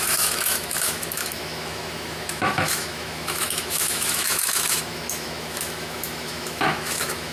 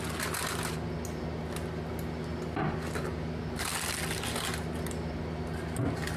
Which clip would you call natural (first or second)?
second